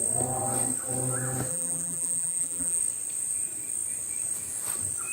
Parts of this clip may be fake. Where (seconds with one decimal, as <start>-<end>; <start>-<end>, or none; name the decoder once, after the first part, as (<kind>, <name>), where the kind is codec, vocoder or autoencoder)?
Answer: 1.5-2.8 (vocoder, BigVGAN v2)